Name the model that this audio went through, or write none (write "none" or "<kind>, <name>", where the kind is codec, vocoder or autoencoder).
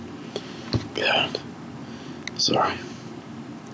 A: none